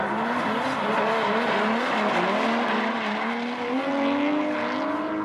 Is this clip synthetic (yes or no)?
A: no